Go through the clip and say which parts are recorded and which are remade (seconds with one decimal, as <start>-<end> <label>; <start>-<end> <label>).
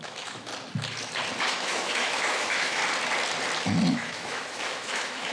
0.0-0.5 remade; 0.5-1.4 recorded; 1.4-2.8 remade; 2.8-3.9 recorded; 3.9-5.3 remade